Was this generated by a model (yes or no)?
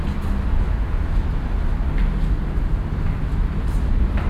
no